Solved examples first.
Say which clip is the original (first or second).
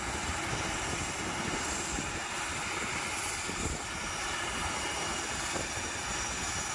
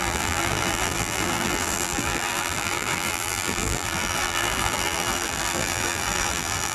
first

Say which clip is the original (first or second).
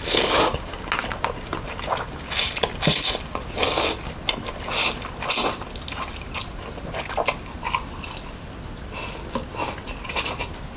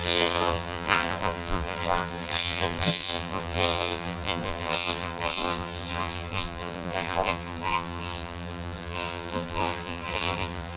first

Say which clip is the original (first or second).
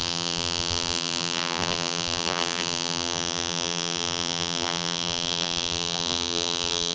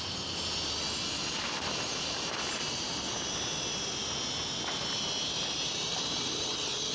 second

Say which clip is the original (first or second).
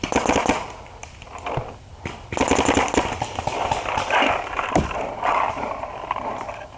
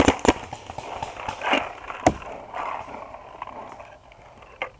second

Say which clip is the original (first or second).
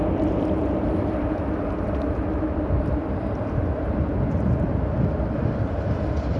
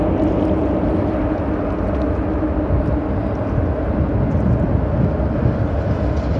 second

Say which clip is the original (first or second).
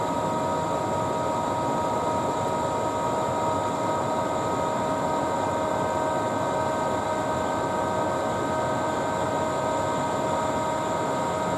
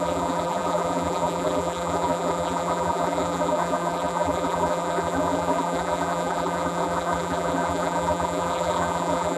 first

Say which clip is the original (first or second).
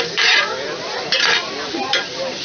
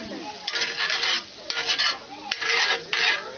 second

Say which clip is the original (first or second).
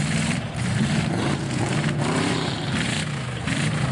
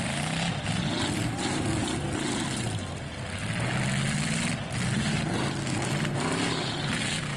second